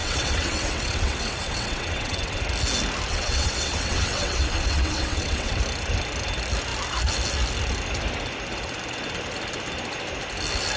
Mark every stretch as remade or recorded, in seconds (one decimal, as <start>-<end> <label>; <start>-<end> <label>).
0.0-2.4 remade; 2.4-3.1 recorded; 3.1-5.6 remade; 5.6-10.8 recorded